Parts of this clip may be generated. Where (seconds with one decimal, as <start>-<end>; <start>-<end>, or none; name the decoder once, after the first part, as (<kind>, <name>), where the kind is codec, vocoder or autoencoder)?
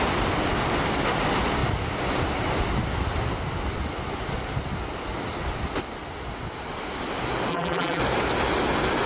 7.5-8.0 (vocoder, BigVGAN v2)